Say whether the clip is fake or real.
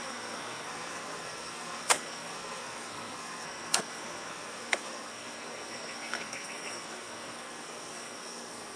fake